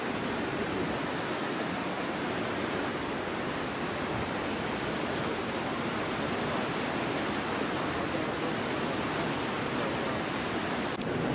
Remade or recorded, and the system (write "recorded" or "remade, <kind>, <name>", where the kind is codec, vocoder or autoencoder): recorded